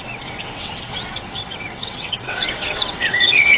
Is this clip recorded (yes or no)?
no